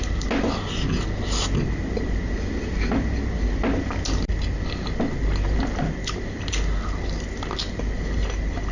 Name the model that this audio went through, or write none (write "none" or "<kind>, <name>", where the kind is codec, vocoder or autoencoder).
none